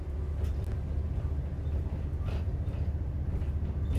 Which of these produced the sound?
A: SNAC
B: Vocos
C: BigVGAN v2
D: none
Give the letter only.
D